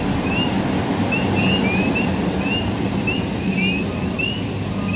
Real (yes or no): yes